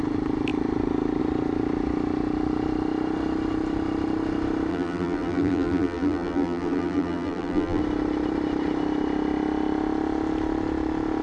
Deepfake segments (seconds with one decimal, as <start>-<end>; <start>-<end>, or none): 4.7-7.8